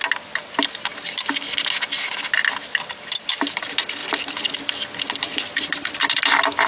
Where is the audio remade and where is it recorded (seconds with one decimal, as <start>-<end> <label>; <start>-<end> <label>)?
0.0-6.7 recorded